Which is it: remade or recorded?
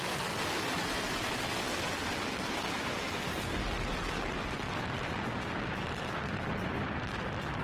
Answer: remade